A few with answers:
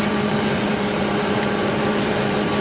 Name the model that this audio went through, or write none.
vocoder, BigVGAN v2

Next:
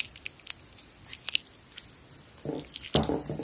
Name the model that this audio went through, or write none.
none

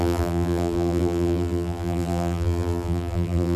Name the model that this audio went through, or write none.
vocoder, BigVGAN v2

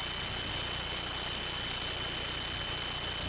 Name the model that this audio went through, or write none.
none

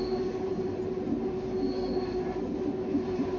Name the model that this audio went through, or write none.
none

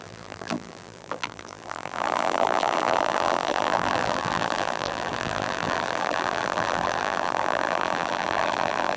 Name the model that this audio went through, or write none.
vocoder, BigVGAN v2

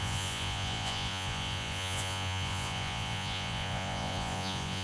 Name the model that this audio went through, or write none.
vocoder, Vocos